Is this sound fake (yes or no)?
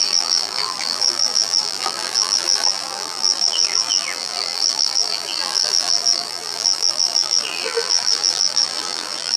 yes